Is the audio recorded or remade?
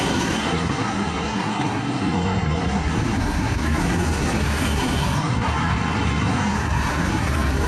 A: remade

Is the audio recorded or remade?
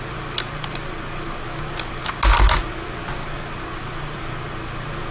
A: recorded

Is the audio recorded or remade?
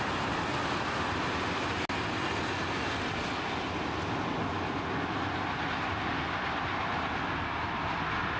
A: recorded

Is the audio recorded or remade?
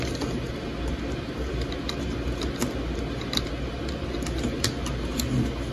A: recorded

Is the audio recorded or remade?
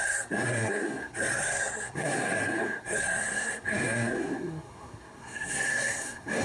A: remade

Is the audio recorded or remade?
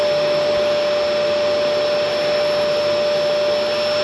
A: recorded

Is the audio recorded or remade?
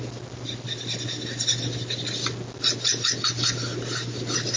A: recorded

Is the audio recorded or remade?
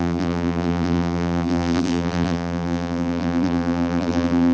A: remade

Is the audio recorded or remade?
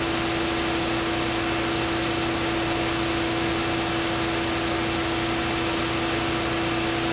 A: recorded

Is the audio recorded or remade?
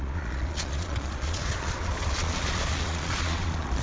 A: remade